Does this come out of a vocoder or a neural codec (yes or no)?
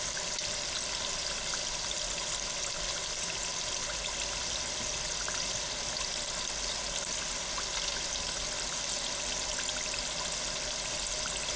no